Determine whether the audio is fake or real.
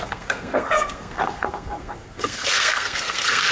fake